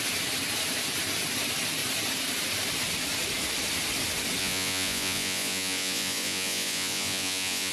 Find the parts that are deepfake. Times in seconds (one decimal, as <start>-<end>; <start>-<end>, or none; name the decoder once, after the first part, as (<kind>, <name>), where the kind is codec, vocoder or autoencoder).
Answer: 4.4-7.7 (vocoder, Vocos)